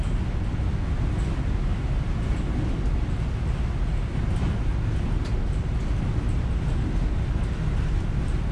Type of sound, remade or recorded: recorded